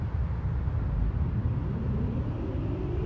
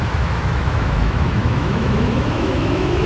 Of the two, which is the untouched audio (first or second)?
first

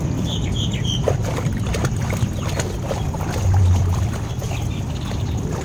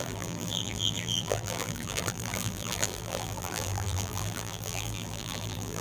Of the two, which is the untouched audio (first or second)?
first